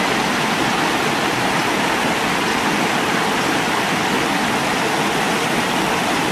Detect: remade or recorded recorded